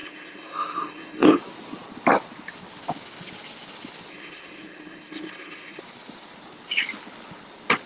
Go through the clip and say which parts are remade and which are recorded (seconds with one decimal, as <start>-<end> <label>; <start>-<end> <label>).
0.0-1.4 remade; 1.4-4.1 recorded; 4.1-5.8 remade; 5.8-7.9 recorded